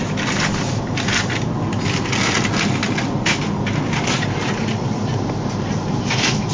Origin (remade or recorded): recorded